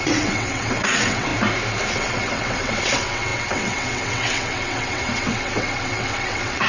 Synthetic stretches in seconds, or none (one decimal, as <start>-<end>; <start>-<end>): 0.0-1.3; 1.9-6.7